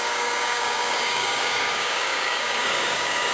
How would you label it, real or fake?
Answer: fake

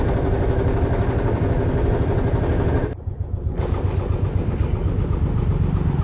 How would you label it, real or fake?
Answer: real